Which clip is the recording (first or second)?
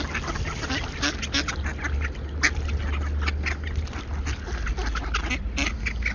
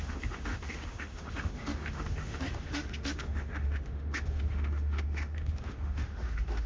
first